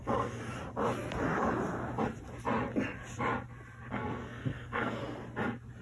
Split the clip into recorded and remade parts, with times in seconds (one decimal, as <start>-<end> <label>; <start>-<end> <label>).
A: 0.0-0.4 remade; 0.4-3.9 recorded; 3.9-5.0 remade; 5.0-5.8 recorded